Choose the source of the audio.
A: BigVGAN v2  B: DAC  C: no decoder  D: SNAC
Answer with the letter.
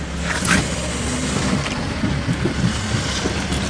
C